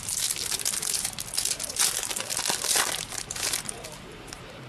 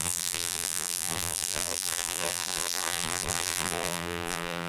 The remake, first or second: second